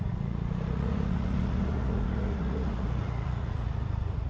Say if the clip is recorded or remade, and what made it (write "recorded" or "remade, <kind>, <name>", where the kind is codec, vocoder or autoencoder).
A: remade, vocoder, Vocos